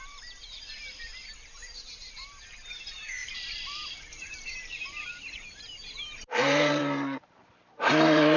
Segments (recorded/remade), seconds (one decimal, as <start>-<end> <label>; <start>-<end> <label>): 0.0-1.1 remade; 1.1-1.8 recorded; 1.8-8.4 remade